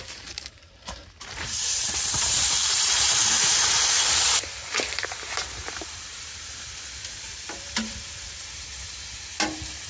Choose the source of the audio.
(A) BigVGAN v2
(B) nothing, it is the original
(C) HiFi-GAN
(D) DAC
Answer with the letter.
A